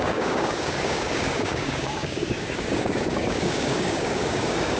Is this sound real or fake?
fake